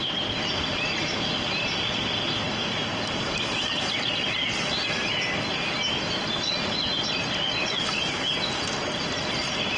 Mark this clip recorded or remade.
recorded